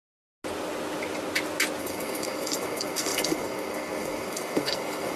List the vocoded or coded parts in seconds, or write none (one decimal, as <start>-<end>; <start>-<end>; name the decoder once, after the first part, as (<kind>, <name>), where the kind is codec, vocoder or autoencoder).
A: 1.8-5.2 (codec, SNAC)